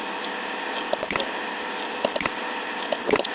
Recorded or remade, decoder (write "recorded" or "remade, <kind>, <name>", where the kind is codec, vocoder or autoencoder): recorded